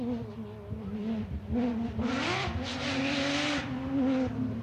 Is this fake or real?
real